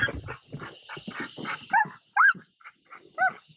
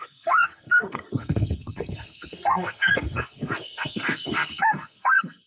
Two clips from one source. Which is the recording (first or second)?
first